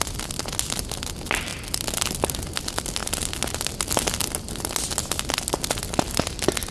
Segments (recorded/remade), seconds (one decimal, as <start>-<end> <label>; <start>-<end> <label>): 0.0-6.7 recorded